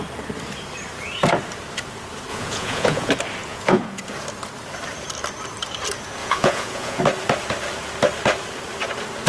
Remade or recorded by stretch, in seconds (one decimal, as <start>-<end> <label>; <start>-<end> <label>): 0.0-2.3 recorded; 2.3-3.1 remade; 3.1-3.5 recorded; 3.5-4.0 remade; 4.0-6.2 recorded; 6.2-7.0 remade; 7.0-9.3 recorded